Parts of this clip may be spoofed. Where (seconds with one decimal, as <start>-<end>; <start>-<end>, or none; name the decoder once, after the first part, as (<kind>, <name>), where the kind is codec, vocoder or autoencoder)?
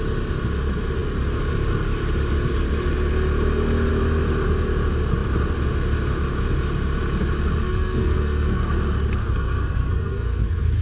7.6-8.7 (codec, SNAC); 9.2-10.8